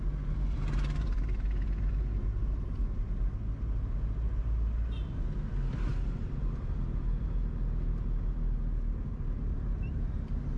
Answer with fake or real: real